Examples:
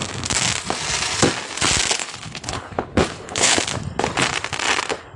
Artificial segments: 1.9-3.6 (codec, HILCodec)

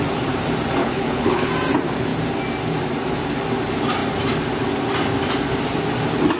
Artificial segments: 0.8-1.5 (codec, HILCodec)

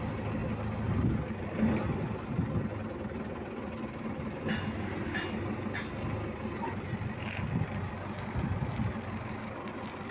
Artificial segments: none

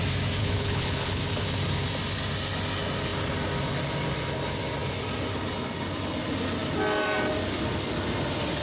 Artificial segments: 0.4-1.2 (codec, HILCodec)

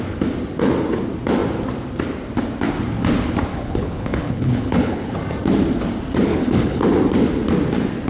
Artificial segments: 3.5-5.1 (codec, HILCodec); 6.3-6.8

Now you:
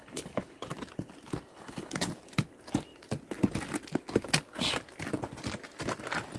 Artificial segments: 0.0-0.7 (codec, HILCodec); 1.5-2.1